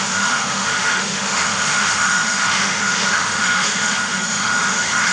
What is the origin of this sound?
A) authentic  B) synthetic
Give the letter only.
B